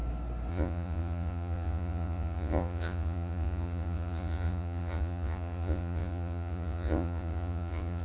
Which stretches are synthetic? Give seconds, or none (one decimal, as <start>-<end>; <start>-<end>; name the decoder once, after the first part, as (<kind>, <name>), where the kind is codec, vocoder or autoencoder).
0.5-8.0 (vocoder, Vocos)